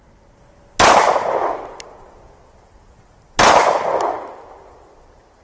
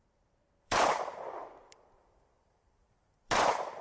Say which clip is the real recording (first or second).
first